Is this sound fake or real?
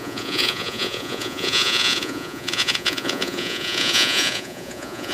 fake